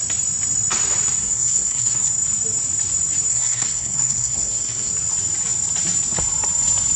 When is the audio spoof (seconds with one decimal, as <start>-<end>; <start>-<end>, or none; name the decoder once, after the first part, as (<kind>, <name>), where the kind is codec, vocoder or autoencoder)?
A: 1.2-2.1 (codec, SNAC); 3.3-4.9

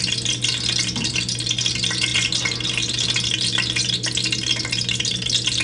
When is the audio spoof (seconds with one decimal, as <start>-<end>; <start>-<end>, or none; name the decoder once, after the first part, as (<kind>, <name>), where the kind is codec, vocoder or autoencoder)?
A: none

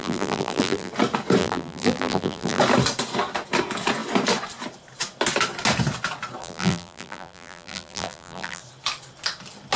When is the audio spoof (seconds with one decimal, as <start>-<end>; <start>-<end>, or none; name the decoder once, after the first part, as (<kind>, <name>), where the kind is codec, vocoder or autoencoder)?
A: 0.0-0.9 (vocoder, BigVGAN v2); 1.4-2.6; 6.4-8.6